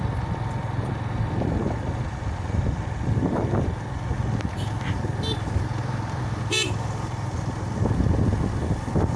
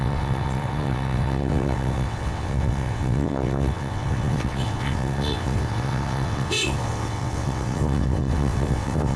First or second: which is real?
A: first